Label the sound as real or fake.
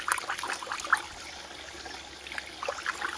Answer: real